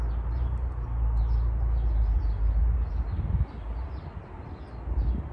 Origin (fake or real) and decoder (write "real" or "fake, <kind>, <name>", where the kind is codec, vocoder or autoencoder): real